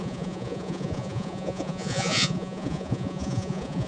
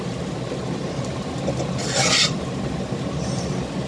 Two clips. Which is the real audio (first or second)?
second